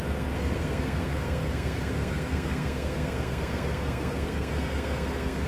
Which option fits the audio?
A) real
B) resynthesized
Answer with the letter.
B